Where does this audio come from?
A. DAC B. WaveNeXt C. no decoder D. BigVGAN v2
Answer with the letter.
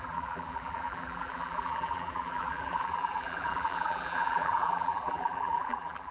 D